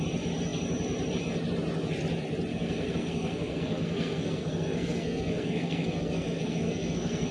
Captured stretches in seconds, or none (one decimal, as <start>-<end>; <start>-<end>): 0.0-2.5